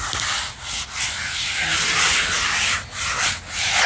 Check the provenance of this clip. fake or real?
real